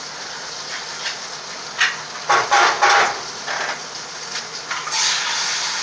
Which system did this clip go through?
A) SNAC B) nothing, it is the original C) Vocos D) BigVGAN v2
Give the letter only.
B